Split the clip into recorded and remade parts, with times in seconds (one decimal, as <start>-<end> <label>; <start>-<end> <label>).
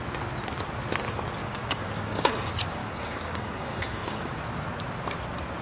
0.0-1.4 recorded; 1.4-2.4 remade; 2.4-2.8 recorded; 2.8-4.3 remade; 4.3-5.6 recorded